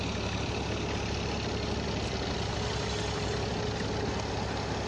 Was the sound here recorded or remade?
recorded